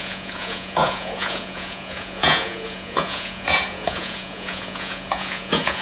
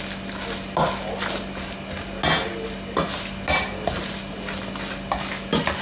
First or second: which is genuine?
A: second